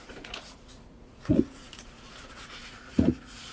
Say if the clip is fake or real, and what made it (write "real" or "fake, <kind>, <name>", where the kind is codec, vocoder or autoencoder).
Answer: fake, vocoder, Vocos